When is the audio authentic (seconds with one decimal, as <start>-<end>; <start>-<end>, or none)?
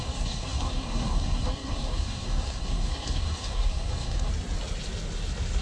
4.3-5.6